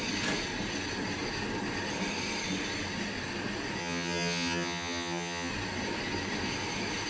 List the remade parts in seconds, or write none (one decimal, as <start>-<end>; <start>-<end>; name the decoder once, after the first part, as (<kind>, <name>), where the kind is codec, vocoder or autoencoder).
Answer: 3.8-5.5 (vocoder, HiFi-GAN)